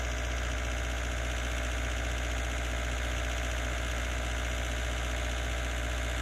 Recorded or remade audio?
recorded